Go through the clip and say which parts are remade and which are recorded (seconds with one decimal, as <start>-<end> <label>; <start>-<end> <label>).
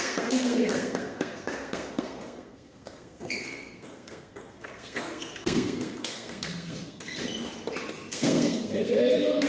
0.0-7.2 remade; 7.2-8.1 recorded; 8.1-9.5 remade